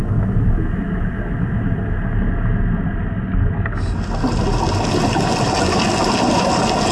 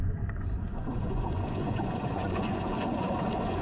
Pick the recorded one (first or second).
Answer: first